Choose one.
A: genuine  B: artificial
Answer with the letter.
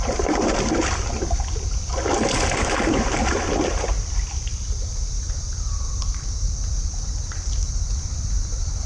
B